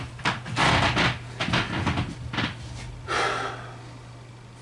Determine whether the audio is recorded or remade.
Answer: recorded